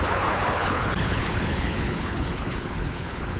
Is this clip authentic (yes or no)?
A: no